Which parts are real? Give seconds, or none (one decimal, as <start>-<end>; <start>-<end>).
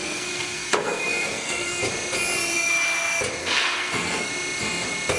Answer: 1.8-3.4; 4.3-5.2